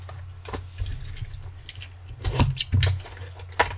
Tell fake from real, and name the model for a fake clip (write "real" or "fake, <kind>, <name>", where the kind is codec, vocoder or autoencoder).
real